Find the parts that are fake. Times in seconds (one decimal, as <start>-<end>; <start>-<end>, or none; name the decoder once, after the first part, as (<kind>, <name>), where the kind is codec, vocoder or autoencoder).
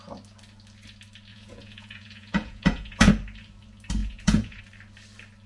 1.3-3.1 (vocoder, Vocos); 4.0-4.6